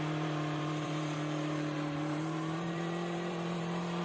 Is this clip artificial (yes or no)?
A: yes